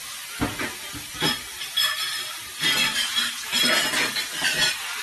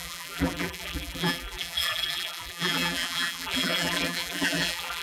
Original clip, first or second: first